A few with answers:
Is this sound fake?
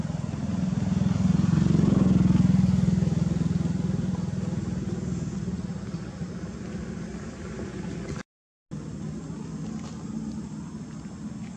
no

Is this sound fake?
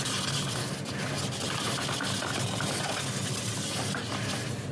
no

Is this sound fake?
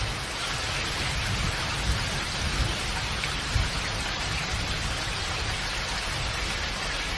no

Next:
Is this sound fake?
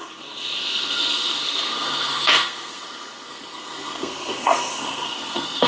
yes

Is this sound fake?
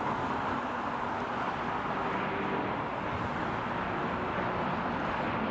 no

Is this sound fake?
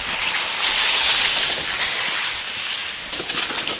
no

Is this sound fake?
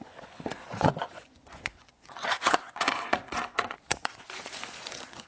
yes